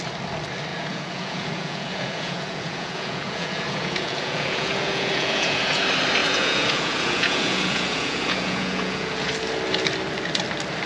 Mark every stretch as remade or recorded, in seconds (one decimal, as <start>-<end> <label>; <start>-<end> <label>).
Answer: 0.0-0.7 recorded; 0.7-5.8 remade; 5.8-6.2 recorded; 6.2-9.3 remade; 9.3-10.9 recorded